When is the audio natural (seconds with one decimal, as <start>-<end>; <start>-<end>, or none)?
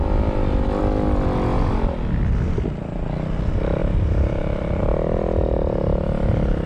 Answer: 0.0-3.8; 4.8-6.7